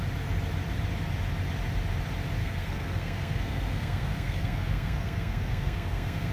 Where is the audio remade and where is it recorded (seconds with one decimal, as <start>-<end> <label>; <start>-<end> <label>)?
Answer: 0.0-2.4 recorded; 2.4-6.3 remade